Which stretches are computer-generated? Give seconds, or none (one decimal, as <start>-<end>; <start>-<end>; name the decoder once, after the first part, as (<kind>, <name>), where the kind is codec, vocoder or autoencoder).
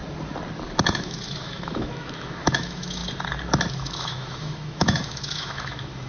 0.9-3.0 (autoencoder, DAC-VAE); 3.7-6.1